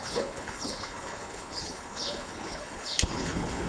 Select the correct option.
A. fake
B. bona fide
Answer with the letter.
A